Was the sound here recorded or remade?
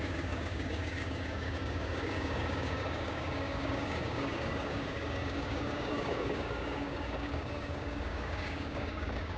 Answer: remade